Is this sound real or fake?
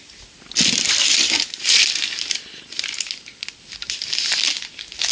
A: real